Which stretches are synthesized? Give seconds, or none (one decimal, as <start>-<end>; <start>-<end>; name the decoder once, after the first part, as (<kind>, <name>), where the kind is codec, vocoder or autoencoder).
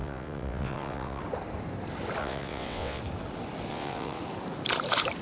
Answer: 0.0-1.2 (vocoder, WaveNeXt); 2.2-3.0; 3.7-4.2